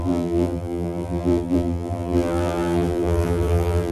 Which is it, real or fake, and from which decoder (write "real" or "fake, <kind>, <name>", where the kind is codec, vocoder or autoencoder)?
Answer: fake, vocoder, BigVGAN v2